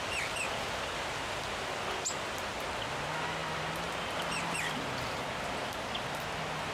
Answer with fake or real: real